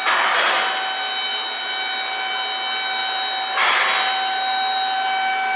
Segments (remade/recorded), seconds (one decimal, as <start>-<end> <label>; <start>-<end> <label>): 0.0-5.6 recorded